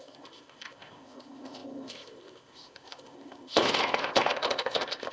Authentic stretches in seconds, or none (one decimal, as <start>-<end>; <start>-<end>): none